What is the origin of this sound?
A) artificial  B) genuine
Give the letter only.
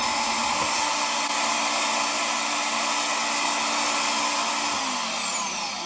B